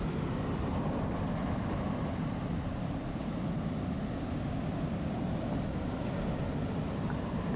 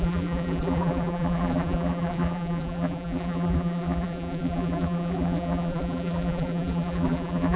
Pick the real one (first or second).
first